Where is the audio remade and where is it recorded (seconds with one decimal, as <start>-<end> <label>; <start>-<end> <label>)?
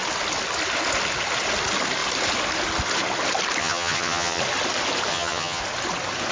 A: 0.0-3.6 recorded; 3.6-4.4 remade; 4.4-5.1 recorded; 5.1-5.6 remade; 5.6-6.3 recorded